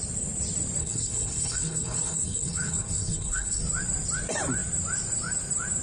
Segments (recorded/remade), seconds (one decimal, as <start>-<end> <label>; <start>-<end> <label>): 0.0-0.8 recorded; 0.8-3.6 remade; 3.6-5.8 recorded